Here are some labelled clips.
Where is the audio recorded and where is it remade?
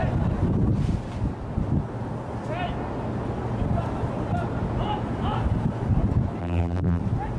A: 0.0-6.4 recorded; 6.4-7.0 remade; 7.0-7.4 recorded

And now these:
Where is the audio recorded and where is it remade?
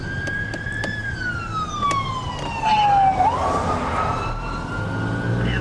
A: 0.0-5.6 recorded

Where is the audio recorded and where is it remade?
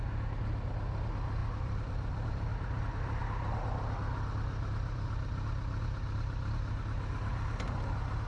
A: 0.0-1.4 recorded; 1.4-2.8 remade; 2.8-8.3 recorded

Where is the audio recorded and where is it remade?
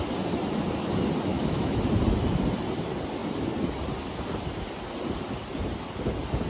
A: 0.0-1.3 recorded; 1.3-1.8 remade; 1.8-6.5 recorded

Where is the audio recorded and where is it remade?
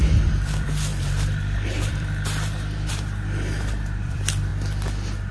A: 0.0-4.5 remade; 4.5-5.3 recorded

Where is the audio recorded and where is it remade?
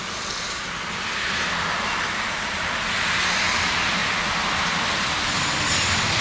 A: 0.0-6.2 recorded